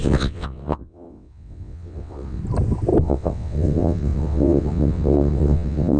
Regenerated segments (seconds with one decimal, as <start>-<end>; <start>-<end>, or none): 0.0-2.4; 3.0-6.0